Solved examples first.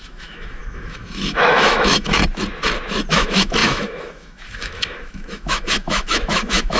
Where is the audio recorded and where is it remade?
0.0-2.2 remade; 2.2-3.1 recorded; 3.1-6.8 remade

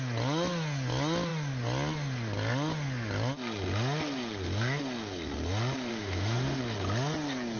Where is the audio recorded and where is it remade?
0.0-5.9 recorded; 5.9-6.6 remade; 6.6-7.6 recorded

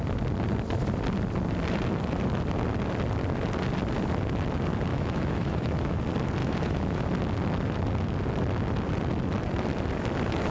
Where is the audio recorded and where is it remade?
0.0-4.9 recorded; 4.9-6.0 remade; 6.0-6.4 recorded; 6.4-7.1 remade; 7.1-10.5 recorded

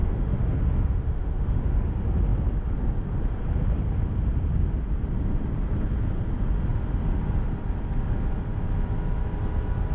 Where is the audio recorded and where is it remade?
0.0-1.9 remade; 1.9-9.9 recorded

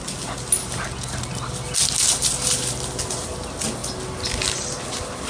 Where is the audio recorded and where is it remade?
0.0-5.3 recorded

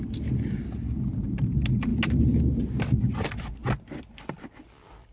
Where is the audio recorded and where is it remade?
0.0-5.1 recorded

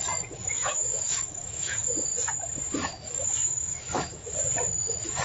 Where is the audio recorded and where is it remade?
0.0-0.4 recorded; 0.4-1.9 remade; 1.9-2.8 recorded; 2.8-4.4 remade; 4.4-5.2 recorded

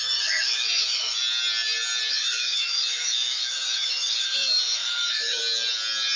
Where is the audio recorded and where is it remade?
0.0-1.2 remade; 1.2-2.1 recorded; 2.1-5.4 remade; 5.4-6.2 recorded